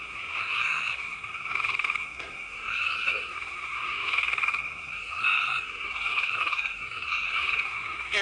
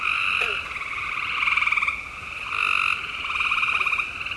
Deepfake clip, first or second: first